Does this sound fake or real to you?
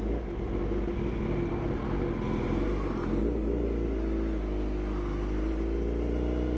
real